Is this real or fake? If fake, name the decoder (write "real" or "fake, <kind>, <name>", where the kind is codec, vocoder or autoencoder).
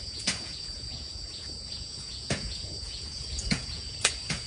fake, vocoder, Vocos